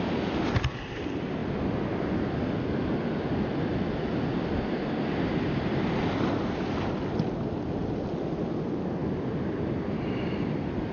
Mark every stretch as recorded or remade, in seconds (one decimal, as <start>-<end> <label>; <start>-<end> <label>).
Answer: 0.0-10.9 recorded